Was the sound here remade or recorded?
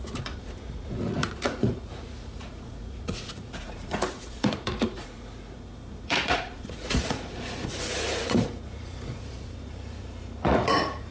remade